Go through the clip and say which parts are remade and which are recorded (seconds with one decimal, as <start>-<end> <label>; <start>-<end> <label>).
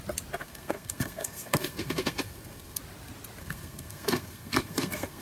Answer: 0.0-0.4 recorded; 0.4-2.8 remade; 2.8-3.4 recorded; 3.4-5.2 remade